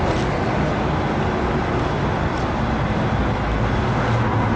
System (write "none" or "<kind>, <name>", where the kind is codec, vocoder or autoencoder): none